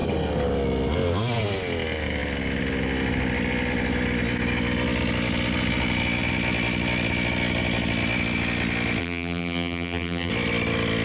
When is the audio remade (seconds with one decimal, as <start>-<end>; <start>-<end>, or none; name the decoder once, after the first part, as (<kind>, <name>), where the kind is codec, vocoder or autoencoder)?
9.0-10.3 (vocoder, BigVGAN v2)